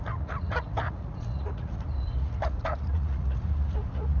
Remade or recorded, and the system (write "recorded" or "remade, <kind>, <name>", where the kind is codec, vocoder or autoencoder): remade, vocoder, Vocos